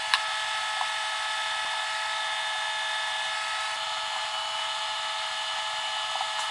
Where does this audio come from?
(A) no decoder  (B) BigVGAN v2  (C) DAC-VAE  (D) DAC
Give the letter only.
A